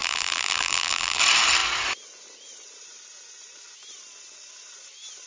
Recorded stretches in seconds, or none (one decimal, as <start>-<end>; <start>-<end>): 1.2-5.3